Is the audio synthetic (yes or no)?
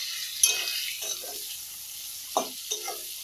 no